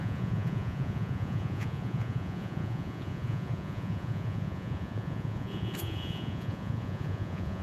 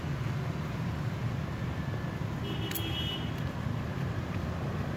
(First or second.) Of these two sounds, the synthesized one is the first